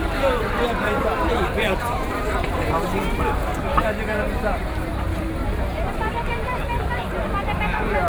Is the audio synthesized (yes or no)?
yes